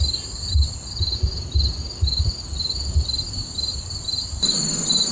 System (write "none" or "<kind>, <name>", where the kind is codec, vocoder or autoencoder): none